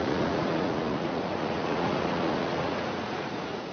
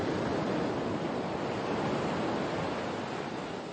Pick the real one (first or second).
second